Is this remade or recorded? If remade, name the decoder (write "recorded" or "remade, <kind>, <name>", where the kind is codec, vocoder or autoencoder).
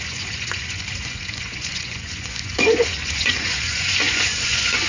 remade, vocoder, Vocos